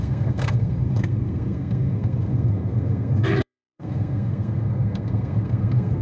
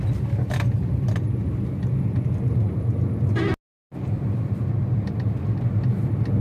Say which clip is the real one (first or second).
second